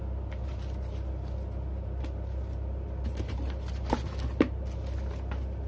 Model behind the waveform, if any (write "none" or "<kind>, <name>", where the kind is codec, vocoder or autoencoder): none